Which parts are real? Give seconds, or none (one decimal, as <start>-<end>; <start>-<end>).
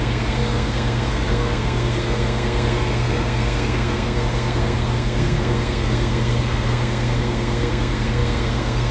none